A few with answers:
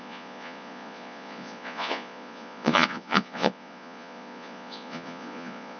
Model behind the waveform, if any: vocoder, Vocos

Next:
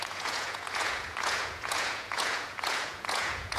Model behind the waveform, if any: vocoder, Vocos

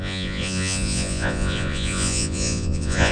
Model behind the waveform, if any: vocoder, Vocos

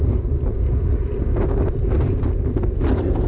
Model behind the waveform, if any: none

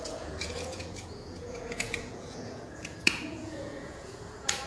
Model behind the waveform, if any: vocoder, Vocos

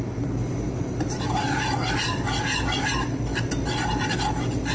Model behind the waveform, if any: none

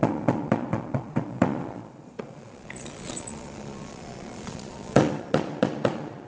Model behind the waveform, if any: vocoder, Vocos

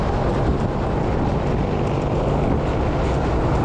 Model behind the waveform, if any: none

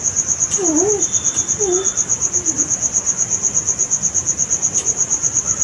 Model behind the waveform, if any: none